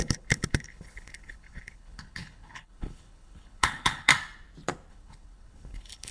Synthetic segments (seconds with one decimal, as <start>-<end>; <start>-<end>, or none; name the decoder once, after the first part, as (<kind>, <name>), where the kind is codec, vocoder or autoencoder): 0.0-4.1 (codec, HILCodec); 4.9-6.1